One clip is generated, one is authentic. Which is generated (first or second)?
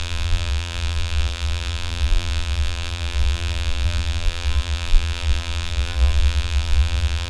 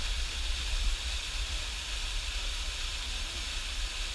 first